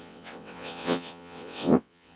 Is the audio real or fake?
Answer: fake